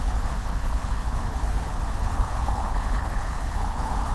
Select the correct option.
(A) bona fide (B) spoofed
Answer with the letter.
B